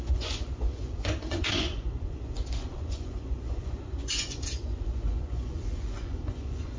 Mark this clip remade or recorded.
remade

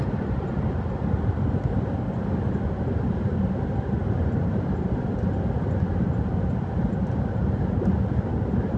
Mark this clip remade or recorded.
recorded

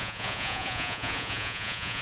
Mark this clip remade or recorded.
remade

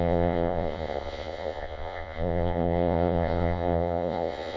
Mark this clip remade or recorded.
remade